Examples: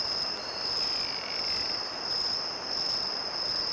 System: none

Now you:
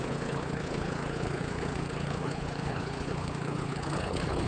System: codec, HILCodec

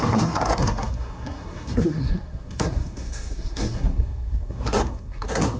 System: codec, SNAC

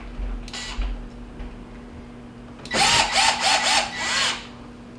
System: none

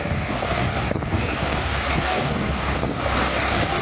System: codec, DAC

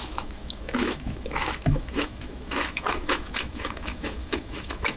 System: autoencoder, DAC-VAE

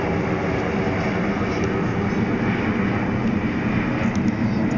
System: none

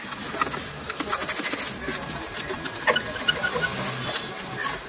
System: none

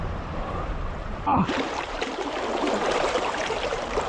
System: vocoder, BigVGAN v2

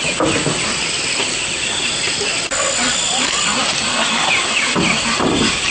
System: none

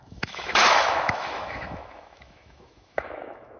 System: autoencoder, DAC-VAE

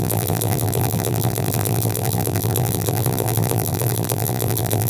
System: vocoder, BigVGAN v2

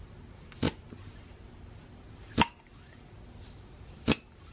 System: none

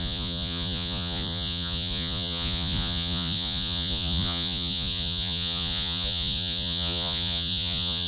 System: vocoder, Vocos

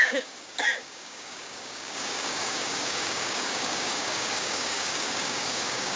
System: codec, DAC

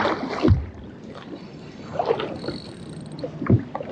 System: none